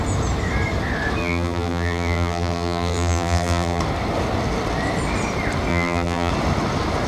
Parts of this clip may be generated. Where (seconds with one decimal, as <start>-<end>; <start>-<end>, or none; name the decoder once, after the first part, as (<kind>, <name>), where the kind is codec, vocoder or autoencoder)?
1.2-3.8 (vocoder, BigVGAN v2); 5.7-6.3